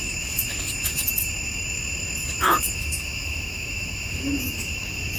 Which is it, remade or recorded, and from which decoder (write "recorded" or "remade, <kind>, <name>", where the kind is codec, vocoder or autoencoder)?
remade, autoencoder, DAC-VAE